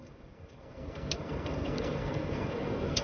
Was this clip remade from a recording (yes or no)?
yes